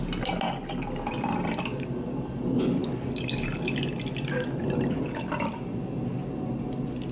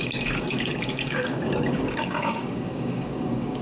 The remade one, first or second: second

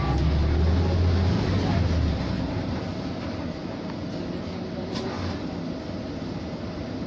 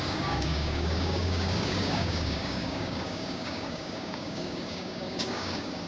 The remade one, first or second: second